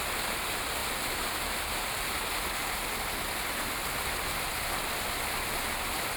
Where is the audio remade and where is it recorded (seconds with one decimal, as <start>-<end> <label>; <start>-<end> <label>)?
0.0-6.2 recorded